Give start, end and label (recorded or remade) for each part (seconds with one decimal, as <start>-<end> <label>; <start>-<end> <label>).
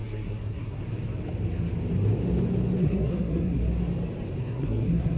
0.0-0.8 remade; 0.8-2.8 recorded; 2.8-3.6 remade; 3.6-4.4 recorded; 4.4-5.2 remade